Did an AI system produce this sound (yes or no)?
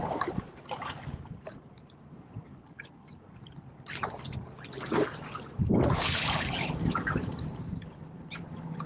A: yes